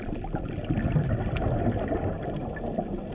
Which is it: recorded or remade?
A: recorded